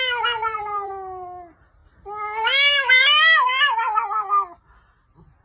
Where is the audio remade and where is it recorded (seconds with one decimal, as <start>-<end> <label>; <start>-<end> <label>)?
0.0-0.4 recorded; 0.4-0.9 remade; 0.9-5.4 recorded

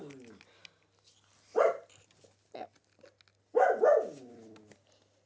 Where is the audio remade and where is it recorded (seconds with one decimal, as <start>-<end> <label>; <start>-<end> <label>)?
0.0-5.3 recorded

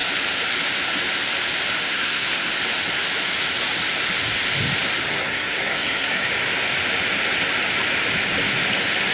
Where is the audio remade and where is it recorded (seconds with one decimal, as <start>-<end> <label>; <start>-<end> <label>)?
0.0-1.9 recorded; 1.9-2.5 remade; 2.5-5.1 recorded; 5.1-6.3 remade; 6.3-9.1 recorded

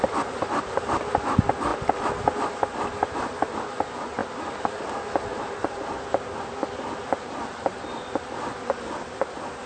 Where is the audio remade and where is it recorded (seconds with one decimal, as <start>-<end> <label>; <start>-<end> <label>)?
0.0-9.7 recorded

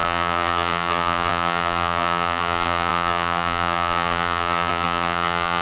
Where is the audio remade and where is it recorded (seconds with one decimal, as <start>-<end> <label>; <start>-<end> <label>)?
0.0-5.6 remade